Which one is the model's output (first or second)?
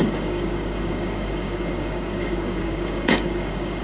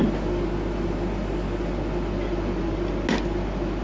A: first